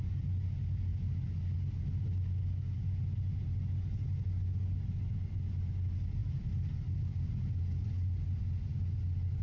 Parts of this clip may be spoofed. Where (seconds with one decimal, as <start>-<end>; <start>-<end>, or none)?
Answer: none